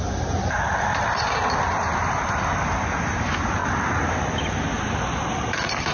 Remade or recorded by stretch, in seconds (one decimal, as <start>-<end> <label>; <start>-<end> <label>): 0.0-5.9 recorded